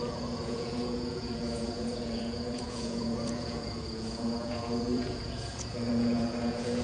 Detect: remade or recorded remade